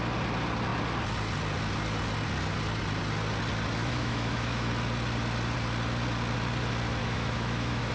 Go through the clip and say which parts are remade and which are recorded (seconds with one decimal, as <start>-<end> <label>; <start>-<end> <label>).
0.0-3.8 recorded; 3.8-4.7 remade; 4.7-7.0 recorded; 7.0-7.9 remade